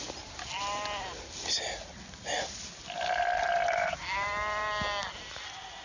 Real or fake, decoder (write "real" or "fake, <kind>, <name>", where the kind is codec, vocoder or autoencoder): real